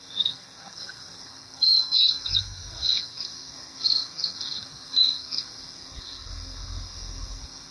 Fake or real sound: fake